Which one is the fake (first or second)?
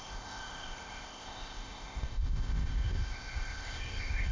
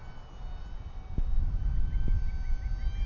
first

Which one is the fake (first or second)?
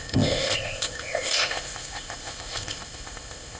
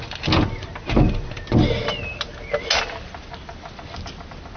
first